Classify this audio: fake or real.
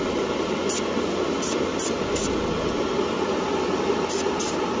real